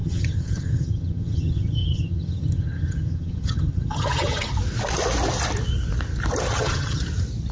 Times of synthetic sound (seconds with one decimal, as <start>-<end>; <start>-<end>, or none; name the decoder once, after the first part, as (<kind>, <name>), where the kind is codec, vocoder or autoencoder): 0.0-4.5 (vocoder, HiFi-GAN); 6.5-7.0